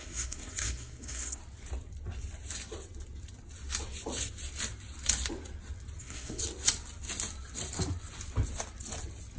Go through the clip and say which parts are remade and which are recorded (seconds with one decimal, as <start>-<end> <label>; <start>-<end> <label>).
0.0-1.4 remade; 1.4-6.0 recorded; 6.0-6.4 remade; 6.4-9.4 recorded